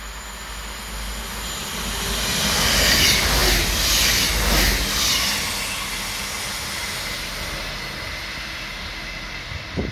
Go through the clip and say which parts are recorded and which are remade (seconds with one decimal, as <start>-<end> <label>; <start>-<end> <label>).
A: 0.0-9.9 recorded